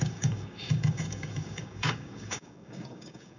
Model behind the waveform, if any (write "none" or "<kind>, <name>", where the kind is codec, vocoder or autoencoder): codec, DAC